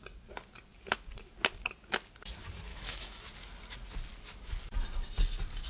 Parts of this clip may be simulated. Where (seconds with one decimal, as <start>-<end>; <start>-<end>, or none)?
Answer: 2.7-3.2